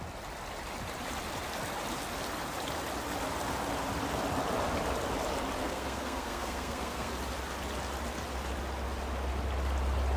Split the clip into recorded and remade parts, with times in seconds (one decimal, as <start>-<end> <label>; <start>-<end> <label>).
0.0-5.6 recorded; 5.6-7.1 remade; 7.1-10.2 recorded